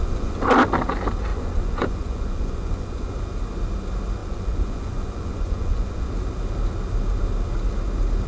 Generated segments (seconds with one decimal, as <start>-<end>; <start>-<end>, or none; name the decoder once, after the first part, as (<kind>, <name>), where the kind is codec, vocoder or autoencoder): 0.0-0.5 (vocoder, Vocos); 1.3-3.1; 4.2-6.1